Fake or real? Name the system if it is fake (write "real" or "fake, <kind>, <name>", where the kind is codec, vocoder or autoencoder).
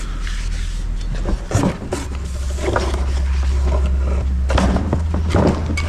real